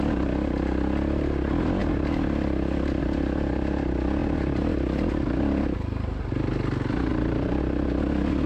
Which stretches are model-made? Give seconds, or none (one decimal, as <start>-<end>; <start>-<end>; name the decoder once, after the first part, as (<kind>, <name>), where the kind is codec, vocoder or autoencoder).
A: 7.1-7.6 (vocoder, BigVGAN v2)